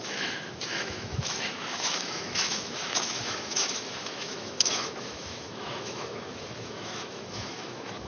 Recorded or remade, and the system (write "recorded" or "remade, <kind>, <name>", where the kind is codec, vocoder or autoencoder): remade, autoencoder, DAC-VAE